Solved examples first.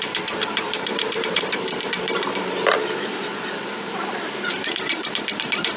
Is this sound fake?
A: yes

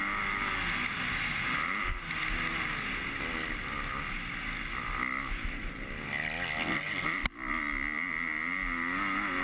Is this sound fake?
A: no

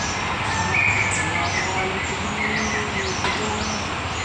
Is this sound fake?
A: no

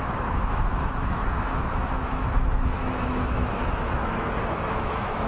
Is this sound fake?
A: yes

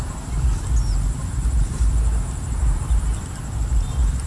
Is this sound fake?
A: no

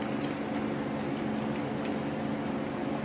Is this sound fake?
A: no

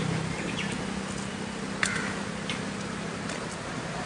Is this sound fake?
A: no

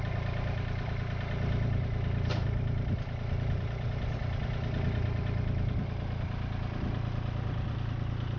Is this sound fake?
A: no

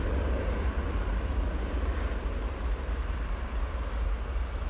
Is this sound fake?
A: no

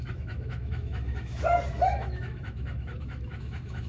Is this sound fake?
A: yes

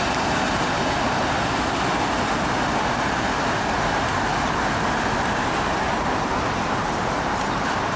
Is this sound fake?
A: no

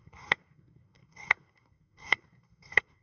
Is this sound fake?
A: yes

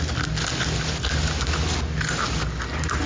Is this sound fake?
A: no